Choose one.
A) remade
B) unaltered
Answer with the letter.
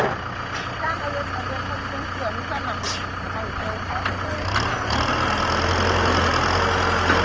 B